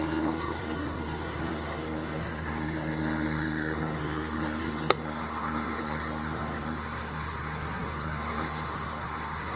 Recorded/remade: remade